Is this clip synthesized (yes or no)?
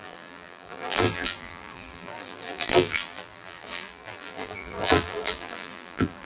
yes